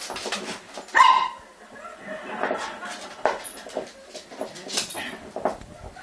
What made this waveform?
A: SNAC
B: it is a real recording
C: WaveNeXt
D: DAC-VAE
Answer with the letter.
B